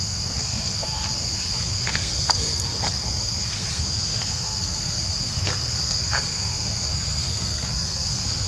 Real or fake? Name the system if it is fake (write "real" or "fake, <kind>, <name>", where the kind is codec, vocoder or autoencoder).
fake, codec, SNAC